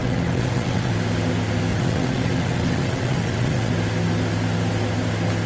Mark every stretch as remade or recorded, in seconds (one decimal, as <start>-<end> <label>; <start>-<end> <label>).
0.0-0.9 remade; 0.9-1.7 recorded; 1.7-3.7 remade; 3.7-5.5 recorded

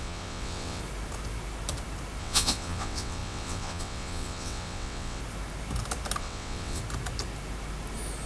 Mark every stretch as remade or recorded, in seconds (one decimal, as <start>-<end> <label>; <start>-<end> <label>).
0.0-0.8 remade; 0.8-2.2 recorded; 2.2-5.2 remade; 5.2-6.2 recorded; 6.2-6.8 remade; 6.8-8.3 recorded

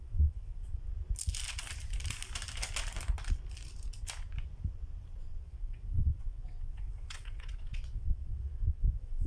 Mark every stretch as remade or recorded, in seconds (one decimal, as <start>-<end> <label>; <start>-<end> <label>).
0.0-0.6 remade; 0.6-5.4 recorded; 5.4-9.3 remade

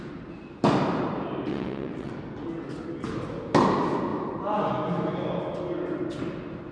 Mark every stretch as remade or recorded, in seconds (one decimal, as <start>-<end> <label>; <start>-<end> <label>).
0.0-1.5 recorded; 1.5-2.1 remade; 2.1-6.7 recorded

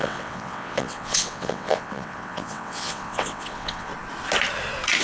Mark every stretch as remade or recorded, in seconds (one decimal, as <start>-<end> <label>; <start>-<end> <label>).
0.0-3.9 remade; 3.9-5.0 recorded

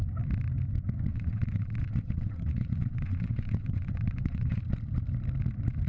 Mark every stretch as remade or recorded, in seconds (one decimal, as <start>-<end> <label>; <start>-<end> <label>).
0.0-1.1 recorded; 1.1-4.6 remade; 4.6-5.9 recorded

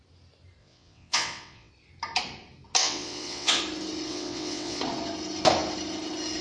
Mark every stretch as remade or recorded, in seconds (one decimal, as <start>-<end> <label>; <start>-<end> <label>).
0.0-0.6 recorded; 0.6-1.7 remade; 1.7-2.8 recorded; 2.8-3.6 remade; 3.6-4.1 recorded; 4.1-4.8 remade; 4.8-6.4 recorded